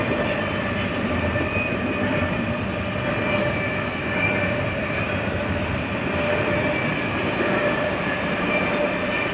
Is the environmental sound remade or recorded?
recorded